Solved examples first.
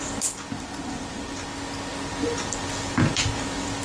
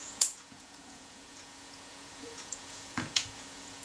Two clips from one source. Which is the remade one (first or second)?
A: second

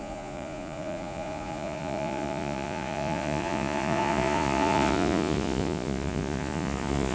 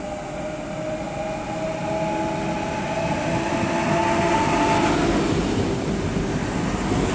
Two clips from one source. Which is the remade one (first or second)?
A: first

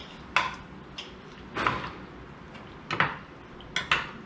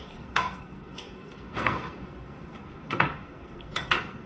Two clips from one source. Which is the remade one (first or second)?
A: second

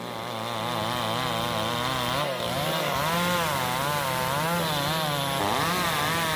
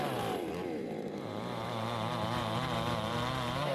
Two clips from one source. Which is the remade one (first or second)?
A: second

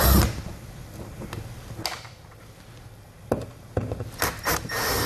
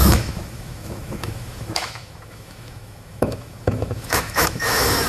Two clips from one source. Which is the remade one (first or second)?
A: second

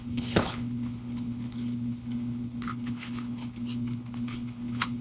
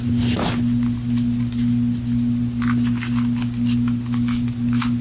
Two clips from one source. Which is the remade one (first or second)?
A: first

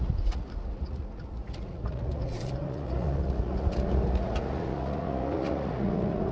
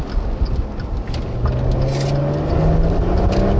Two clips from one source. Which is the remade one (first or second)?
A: first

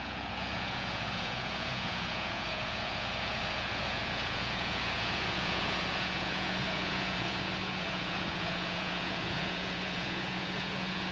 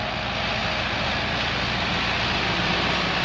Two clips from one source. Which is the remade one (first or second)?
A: first